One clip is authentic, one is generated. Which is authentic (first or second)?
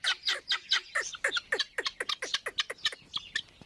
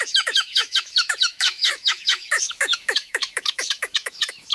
first